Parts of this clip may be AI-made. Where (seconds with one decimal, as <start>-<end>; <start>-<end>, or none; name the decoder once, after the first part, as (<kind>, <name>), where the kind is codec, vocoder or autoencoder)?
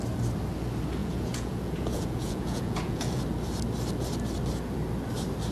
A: 1.0-3.2 (vocoder, Vocos)